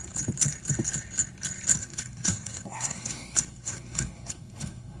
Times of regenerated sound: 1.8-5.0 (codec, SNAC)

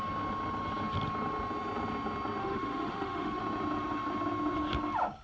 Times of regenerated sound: 2.4-3.4 (autoencoder, DAC-VAE)